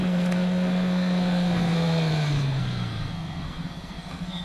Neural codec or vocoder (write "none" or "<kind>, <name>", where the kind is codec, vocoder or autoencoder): codec, SNAC